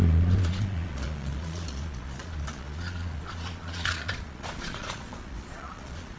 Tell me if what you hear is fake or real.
fake